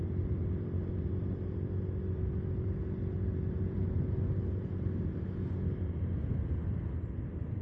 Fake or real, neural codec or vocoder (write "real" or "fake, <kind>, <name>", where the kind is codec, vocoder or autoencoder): real